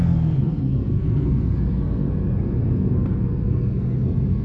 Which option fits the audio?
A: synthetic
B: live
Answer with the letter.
A